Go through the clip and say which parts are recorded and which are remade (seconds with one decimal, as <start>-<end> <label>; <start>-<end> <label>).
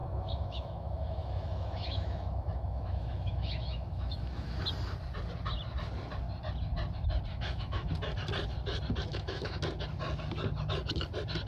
0.0-4.6 remade; 4.6-7.3 recorded; 7.3-7.9 remade; 7.9-9.1 recorded; 9.1-9.6 remade; 9.6-11.5 recorded